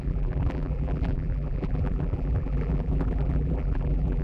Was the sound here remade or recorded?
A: remade